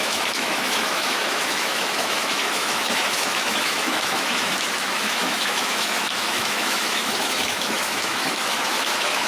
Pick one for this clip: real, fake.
fake